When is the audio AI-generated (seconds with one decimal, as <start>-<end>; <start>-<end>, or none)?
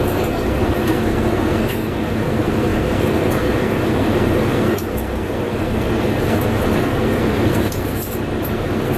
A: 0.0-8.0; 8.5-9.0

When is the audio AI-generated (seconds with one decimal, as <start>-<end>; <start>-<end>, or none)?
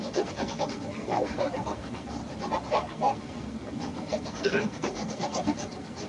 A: 0.0-2.2; 2.7-6.1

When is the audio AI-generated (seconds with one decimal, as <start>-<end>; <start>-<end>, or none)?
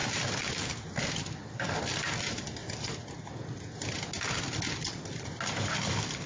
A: none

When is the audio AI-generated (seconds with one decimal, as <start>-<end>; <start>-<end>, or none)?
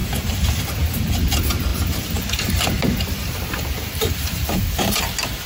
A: 0.0-0.6; 1.7-5.0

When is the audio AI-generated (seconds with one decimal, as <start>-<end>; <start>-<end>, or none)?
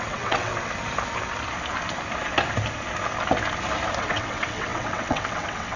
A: 0.0-0.5; 4.0-5.8